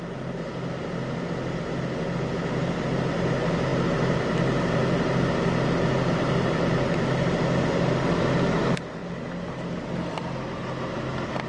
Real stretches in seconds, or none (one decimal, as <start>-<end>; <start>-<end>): 0.0-11.5